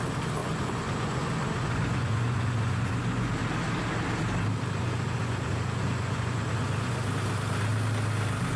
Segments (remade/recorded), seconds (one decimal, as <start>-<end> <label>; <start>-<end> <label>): 0.0-0.4 recorded; 0.4-3.3 remade; 3.3-4.8 recorded; 4.8-7.1 remade; 7.1-8.6 recorded